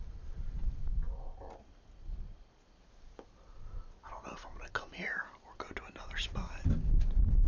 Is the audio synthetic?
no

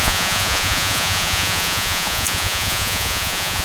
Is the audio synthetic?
yes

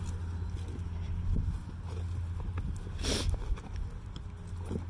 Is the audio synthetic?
no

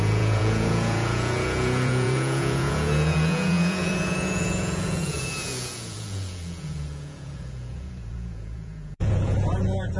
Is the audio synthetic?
yes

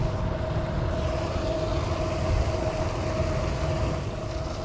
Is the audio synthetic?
no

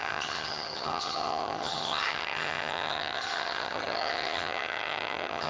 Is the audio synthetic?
yes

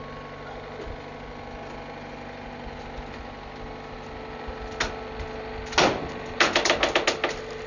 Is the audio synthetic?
no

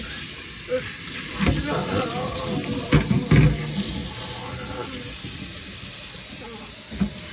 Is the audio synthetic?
no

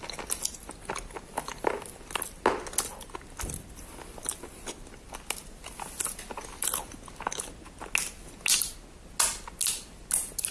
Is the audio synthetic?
no